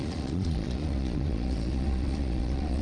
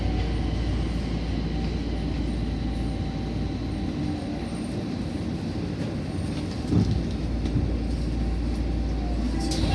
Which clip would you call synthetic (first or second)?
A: first